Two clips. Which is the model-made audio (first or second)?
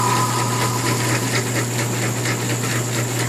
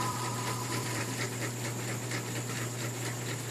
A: second